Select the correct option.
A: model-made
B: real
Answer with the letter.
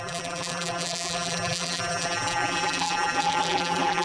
A